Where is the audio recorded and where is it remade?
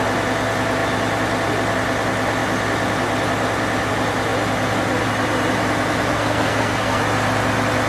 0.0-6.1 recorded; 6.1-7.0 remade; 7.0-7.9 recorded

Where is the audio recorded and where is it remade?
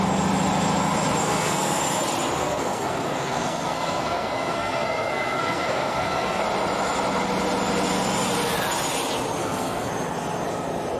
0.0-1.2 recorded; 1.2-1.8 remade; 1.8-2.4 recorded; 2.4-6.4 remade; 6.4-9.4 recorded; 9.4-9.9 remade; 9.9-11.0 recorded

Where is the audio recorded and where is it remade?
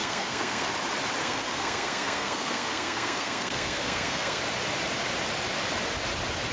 0.0-0.7 remade; 0.7-1.2 recorded; 1.2-4.4 remade; 4.4-6.5 recorded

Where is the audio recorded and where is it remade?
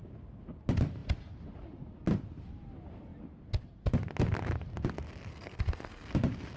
0.0-5.3 recorded; 5.3-6.1 remade; 6.1-6.6 recorded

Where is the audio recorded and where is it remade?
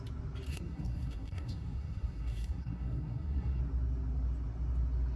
0.0-0.5 recorded; 0.5-3.6 remade; 3.6-5.2 recorded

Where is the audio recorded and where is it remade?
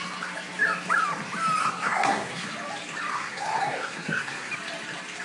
0.0-1.6 recorded; 1.6-2.5 remade; 2.5-3.1 recorded; 3.1-4.5 remade; 4.5-5.2 recorded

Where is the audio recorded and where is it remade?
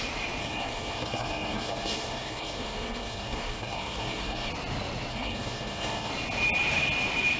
0.0-0.4 recorded; 0.4-4.5 remade; 4.5-5.1 recorded; 5.1-6.1 remade; 6.1-7.4 recorded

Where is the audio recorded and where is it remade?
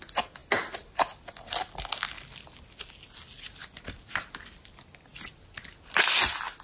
0.0-6.6 recorded